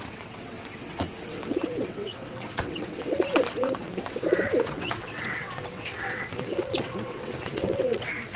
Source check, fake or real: fake